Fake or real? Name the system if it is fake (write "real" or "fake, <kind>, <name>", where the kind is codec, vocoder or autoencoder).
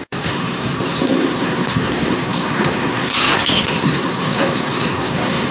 fake, codec, SNAC